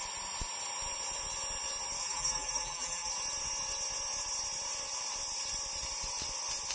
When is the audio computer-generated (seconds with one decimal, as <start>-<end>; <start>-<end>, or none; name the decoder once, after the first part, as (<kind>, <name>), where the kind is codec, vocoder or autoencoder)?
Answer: 2.0-3.1 (vocoder, BigVGAN v2)